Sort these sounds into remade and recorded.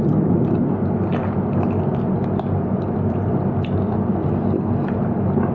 recorded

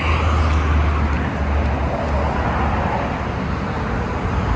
recorded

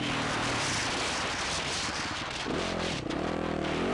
recorded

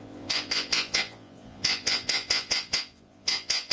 remade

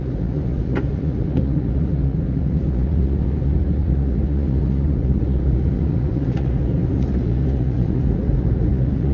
remade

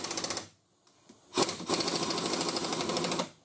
recorded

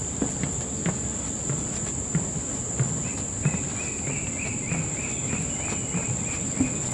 recorded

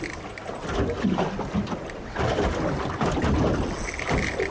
recorded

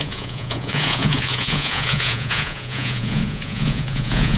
remade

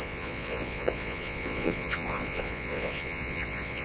remade